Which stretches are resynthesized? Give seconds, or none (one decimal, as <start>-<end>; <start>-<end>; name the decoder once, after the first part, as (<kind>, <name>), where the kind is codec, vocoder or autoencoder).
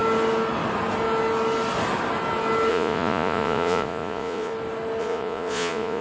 2.7-4.5 (vocoder, Vocos); 5.0-6.0